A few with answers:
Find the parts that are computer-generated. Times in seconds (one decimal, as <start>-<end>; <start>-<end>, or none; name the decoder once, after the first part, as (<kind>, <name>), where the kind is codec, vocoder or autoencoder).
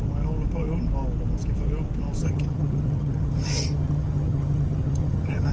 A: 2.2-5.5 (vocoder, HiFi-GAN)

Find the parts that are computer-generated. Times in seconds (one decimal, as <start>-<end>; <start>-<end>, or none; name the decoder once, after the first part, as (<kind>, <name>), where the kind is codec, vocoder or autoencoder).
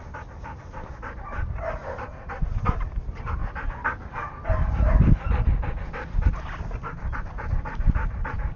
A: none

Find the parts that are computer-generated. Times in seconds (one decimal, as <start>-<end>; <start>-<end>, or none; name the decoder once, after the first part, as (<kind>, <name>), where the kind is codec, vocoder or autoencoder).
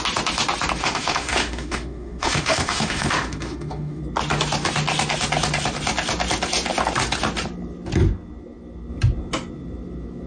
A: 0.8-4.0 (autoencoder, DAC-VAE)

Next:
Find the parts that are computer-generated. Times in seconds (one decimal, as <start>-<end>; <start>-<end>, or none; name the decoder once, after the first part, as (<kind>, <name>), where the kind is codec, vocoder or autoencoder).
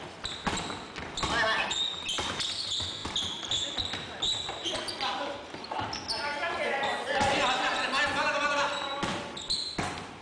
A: none